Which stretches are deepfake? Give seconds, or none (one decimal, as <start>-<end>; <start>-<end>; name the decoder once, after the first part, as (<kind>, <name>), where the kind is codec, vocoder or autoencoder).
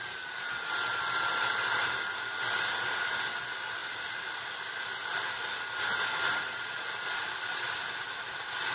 none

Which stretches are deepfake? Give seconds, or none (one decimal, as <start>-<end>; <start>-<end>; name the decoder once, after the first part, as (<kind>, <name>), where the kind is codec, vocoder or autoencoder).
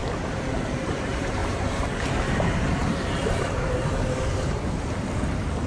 0.9-5.7 (vocoder, BigVGAN v2)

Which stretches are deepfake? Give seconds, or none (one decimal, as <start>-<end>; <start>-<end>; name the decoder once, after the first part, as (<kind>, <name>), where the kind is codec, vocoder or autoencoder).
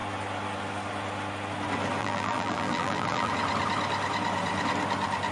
2.0-3.3 (vocoder, BigVGAN v2)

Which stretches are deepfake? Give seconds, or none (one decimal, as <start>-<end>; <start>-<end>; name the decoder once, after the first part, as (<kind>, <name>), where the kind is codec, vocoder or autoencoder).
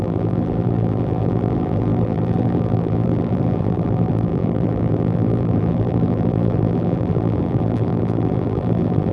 0.0-9.1 (vocoder, BigVGAN v2)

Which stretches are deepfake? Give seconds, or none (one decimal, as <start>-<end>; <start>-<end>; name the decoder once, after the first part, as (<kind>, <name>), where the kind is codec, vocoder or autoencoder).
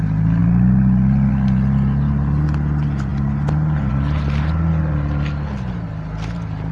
none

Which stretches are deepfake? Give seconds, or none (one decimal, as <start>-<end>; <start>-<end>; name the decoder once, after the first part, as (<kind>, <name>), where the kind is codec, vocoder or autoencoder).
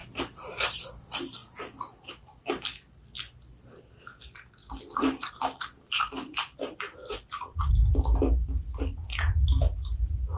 0.0-0.6 (vocoder, BigVGAN v2); 6.3-7.2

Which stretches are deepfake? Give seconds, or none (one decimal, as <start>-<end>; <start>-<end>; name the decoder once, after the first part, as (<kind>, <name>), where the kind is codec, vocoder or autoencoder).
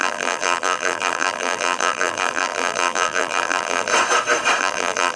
0.0-3.9 (vocoder, BigVGAN v2); 4.6-5.2